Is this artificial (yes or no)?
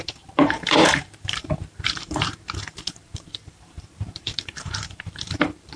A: yes